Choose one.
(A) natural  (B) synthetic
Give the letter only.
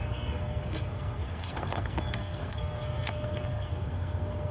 B